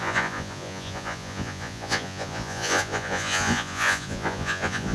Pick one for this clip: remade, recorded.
remade